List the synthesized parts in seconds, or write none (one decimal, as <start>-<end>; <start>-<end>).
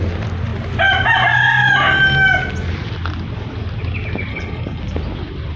4.3-4.8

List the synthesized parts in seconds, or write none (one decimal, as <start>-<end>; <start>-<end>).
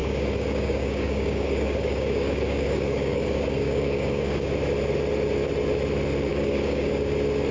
0.0-4.5; 6.3-6.9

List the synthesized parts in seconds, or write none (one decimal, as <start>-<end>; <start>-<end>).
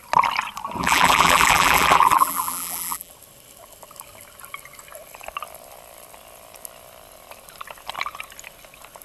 0.8-3.1